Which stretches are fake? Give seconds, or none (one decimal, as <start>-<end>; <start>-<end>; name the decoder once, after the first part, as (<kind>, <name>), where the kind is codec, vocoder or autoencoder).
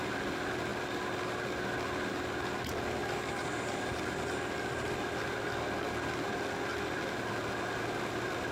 none